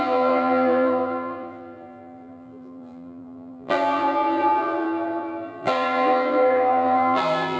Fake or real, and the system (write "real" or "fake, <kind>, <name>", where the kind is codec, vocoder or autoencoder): fake, vocoder, BigVGAN v2